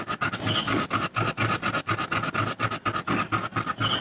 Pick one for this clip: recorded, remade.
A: recorded